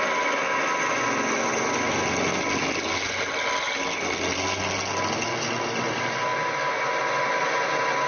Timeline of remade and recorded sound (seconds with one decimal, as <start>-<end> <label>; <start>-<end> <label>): 0.0-8.1 recorded